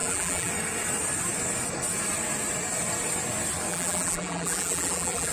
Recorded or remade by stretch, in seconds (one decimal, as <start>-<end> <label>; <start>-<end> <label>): 0.0-0.5 remade; 0.5-3.7 recorded; 3.7-5.3 remade

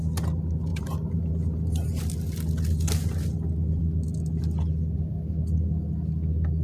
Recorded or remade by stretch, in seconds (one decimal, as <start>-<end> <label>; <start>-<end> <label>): 0.0-0.7 recorded; 0.7-2.0 remade; 2.0-6.6 recorded

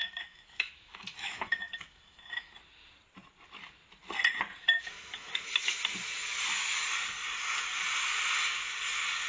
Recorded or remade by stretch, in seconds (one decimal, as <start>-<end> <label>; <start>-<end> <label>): 0.0-2.5 remade; 2.5-4.6 recorded; 4.6-5.8 remade; 5.8-9.3 recorded

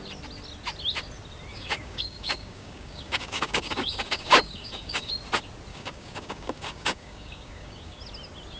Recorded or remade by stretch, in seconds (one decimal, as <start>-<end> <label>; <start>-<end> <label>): 0.0-1.5 recorded; 1.5-5.1 remade; 5.1-5.7 recorded; 5.7-8.0 remade; 8.0-8.6 recorded

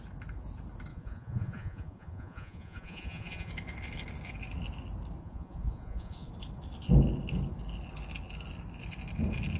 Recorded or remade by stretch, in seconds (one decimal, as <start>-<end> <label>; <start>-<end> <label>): 0.0-0.9 recorded; 0.9-3.5 remade; 3.5-5.2 recorded; 5.2-6.3 remade; 6.3-9.6 recorded

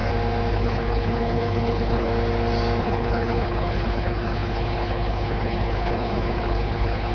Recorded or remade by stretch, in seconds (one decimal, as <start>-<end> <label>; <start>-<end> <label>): 0.0-0.5 recorded; 0.5-2.1 remade; 2.1-2.8 recorded; 2.8-7.1 remade

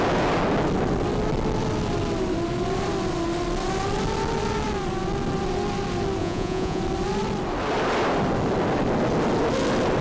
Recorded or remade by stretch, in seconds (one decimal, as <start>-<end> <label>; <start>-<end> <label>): 0.0-6.2 recorded; 6.2-6.8 remade; 6.8-10.0 recorded

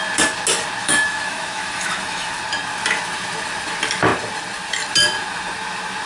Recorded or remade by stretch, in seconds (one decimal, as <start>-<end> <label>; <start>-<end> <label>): 0.0-0.8 recorded; 0.8-2.4 remade; 2.4-6.1 recorded